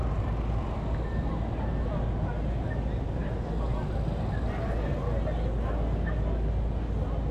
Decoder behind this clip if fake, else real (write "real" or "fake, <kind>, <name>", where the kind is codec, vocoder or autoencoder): real